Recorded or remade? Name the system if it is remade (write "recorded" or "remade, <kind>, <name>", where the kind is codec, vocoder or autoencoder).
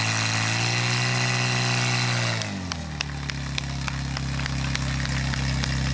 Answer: recorded